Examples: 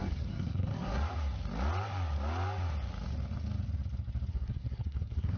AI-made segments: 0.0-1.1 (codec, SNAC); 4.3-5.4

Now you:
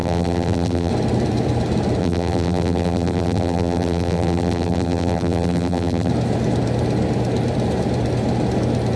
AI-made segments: 0.0-0.9 (vocoder, BigVGAN v2); 2.0-6.1

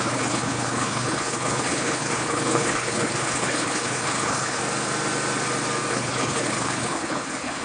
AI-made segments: 0.0-4.6 (codec, HILCodec); 5.9-7.6

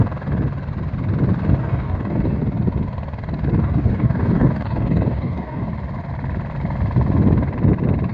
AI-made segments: 1.6-2.4 (codec, DAC); 3.6-5.7

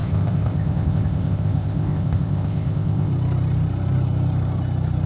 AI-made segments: 0.0-3.1 (codec, ZipCodec)